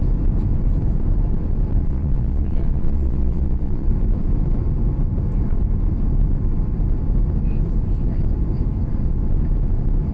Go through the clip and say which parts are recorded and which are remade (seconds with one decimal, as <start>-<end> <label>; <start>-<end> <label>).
0.0-1.8 recorded; 1.8-3.9 remade; 3.9-10.1 recorded